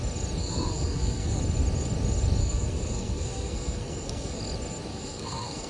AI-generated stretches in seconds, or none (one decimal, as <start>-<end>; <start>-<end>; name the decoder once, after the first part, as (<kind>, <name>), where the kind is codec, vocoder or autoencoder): 0.4-1.4 (codec, SNAC); 2.4-4.4; 4.9-5.7